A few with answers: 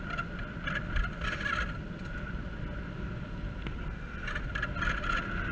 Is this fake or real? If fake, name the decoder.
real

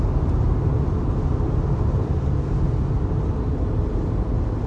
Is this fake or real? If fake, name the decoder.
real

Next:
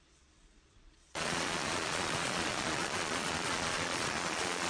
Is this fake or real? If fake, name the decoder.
fake, vocoder, Vocos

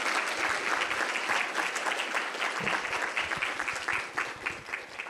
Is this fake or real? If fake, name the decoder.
real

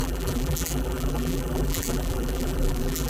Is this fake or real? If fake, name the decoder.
fake, vocoder, BigVGAN v2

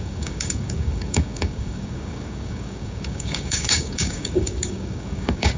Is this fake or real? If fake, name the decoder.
fake, codec, DAC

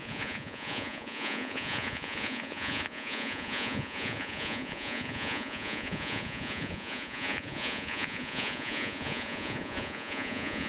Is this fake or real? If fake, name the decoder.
fake, vocoder, Vocos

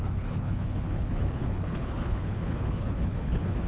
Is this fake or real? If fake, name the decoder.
fake, codec, HILCodec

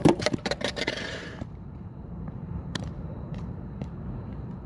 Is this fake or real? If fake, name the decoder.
fake, vocoder, BigVGAN v2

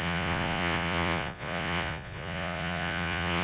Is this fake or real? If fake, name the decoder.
fake, vocoder, Vocos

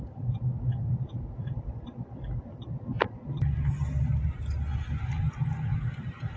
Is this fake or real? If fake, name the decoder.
real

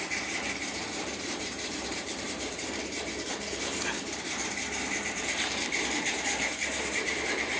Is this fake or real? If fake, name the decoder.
fake, vocoder, BigVGAN v2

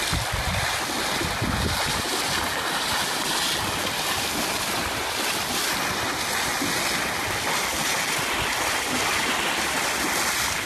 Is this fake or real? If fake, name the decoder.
real